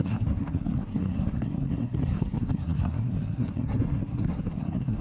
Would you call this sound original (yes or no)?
no